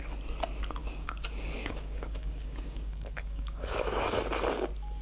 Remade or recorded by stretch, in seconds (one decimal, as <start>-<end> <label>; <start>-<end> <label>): 0.0-0.8 recorded; 0.8-3.8 remade; 3.8-5.0 recorded